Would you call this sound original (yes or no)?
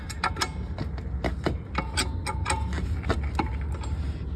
yes